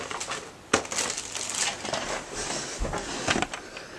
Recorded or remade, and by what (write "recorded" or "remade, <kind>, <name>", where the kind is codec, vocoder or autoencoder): recorded